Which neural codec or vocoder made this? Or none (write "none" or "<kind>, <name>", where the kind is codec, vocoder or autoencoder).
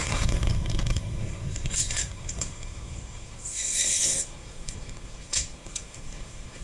codec, SNAC